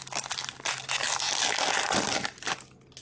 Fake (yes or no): no